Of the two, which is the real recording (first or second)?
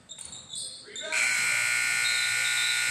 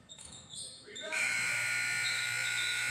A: first